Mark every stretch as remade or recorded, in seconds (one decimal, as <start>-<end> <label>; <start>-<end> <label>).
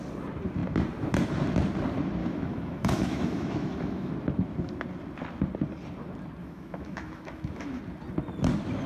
0.0-2.2 recorded; 2.2-4.1 remade; 4.1-6.4 recorded; 6.4-7.8 remade; 7.8-8.9 recorded